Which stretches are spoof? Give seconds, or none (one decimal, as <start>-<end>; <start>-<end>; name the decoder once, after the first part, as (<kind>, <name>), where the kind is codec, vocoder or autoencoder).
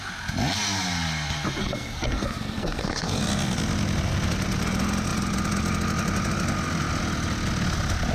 1.6-3.2 (codec, SNAC)